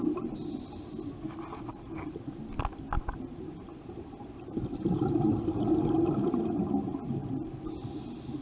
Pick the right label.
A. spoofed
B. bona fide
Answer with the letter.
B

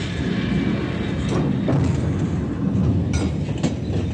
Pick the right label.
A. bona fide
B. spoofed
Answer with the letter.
A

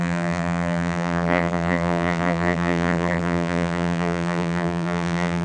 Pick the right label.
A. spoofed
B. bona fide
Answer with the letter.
A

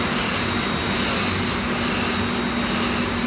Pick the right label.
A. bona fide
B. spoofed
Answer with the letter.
A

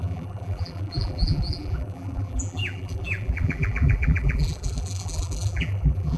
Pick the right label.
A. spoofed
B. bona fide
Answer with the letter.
A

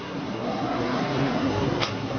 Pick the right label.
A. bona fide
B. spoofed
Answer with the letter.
B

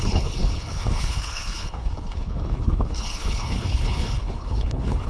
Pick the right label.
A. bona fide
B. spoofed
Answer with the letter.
B